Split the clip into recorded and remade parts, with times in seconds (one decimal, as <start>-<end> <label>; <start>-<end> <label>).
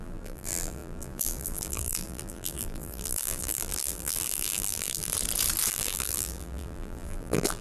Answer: 0.0-5.1 remade; 5.1-5.7 recorded; 5.7-7.6 remade